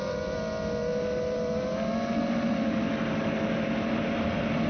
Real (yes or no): yes